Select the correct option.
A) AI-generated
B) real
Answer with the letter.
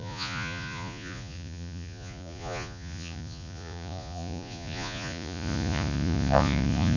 A